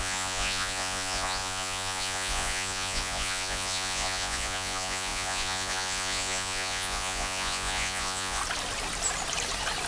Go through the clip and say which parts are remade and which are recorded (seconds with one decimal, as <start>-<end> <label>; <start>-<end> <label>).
0.0-8.4 remade; 8.4-9.9 recorded